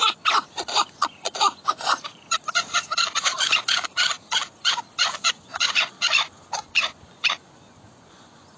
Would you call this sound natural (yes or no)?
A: no